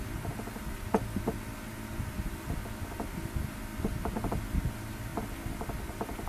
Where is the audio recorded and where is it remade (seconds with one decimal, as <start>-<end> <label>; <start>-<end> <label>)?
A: 0.0-6.3 recorded